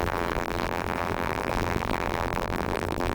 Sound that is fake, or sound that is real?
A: fake